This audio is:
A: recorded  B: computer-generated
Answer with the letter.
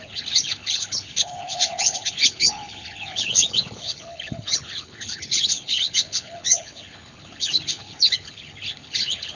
B